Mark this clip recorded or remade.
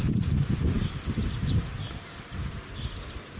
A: recorded